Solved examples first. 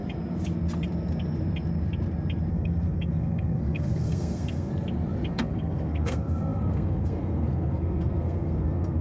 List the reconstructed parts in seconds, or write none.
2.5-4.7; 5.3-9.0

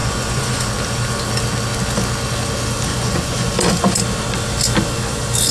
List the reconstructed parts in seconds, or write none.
0.0-0.7; 2.9-3.5

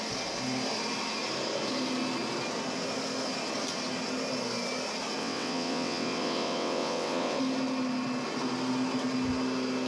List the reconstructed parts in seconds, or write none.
5.2-7.4

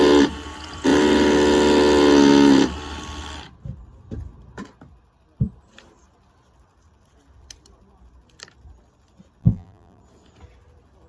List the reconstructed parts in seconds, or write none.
9.4-10.0

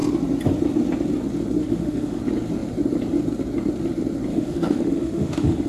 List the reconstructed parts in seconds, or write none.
1.6-2.2; 4.3-5.7